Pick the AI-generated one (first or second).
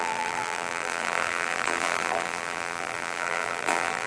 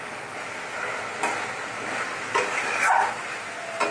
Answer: first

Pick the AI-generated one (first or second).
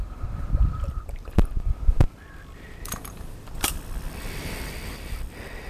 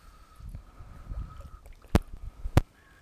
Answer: first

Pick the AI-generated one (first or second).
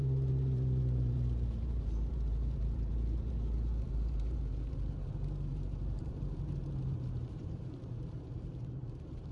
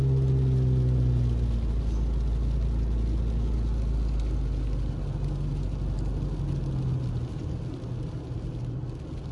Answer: first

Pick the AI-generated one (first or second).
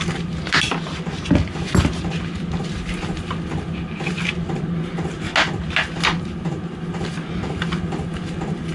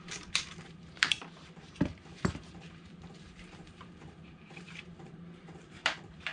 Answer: second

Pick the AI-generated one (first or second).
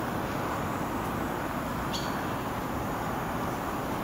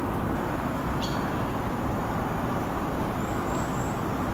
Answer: second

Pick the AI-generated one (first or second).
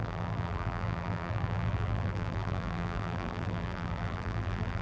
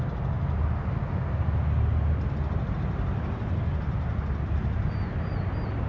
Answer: first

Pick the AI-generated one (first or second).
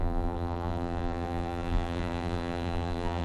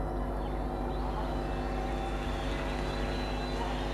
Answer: first